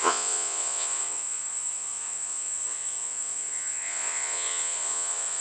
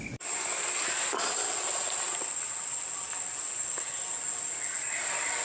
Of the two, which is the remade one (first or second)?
first